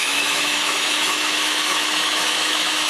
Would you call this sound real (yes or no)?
no